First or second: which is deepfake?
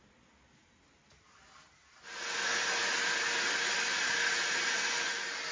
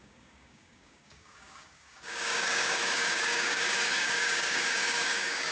second